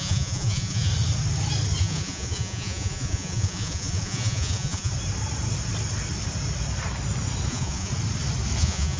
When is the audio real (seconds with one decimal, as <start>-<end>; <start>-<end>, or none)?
0.9-1.8; 4.9-7.5; 7.9-8.6